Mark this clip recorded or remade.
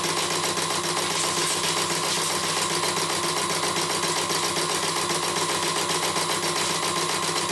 recorded